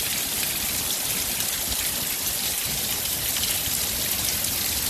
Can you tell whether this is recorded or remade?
recorded